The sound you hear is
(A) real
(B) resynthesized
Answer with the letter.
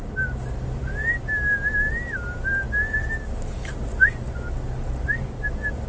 A